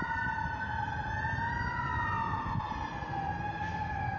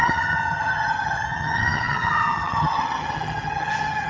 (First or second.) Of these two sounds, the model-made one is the second